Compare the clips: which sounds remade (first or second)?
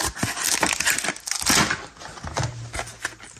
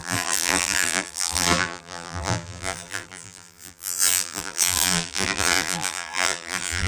second